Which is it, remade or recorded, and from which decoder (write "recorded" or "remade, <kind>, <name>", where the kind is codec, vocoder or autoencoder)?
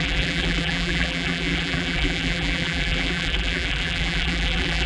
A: remade, vocoder, BigVGAN v2